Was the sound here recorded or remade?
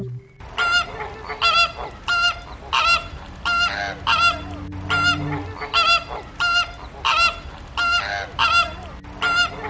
recorded